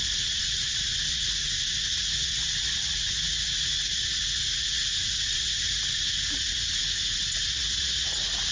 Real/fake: fake